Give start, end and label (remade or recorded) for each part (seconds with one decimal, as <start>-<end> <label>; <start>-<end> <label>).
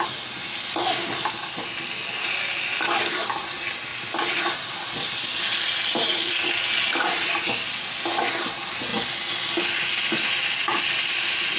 0.0-11.6 recorded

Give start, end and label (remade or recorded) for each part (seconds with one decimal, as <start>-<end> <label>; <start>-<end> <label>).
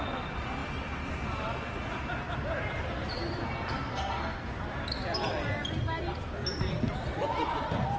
0.0-3.9 recorded; 3.9-4.5 remade; 4.5-8.0 recorded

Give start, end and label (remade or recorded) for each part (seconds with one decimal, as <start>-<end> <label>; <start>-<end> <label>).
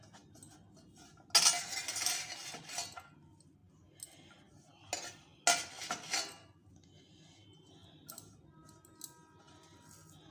0.0-10.3 recorded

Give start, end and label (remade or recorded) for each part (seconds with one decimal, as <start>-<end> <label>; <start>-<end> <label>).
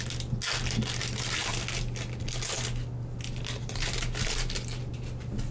0.0-5.5 recorded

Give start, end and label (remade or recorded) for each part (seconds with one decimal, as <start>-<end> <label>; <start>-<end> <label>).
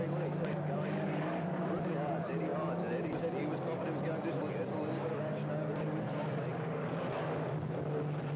0.0-8.4 recorded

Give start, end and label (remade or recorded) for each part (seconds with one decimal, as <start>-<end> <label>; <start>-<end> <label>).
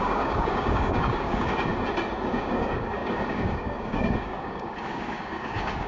0.0-1.7 remade; 1.7-2.3 recorded; 2.3-5.9 remade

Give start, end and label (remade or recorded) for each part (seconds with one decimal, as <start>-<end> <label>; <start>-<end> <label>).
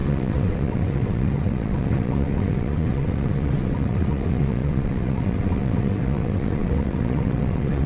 0.0-7.9 remade